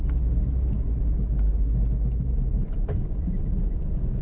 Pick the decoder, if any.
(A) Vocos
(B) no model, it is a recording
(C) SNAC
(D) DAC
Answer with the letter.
B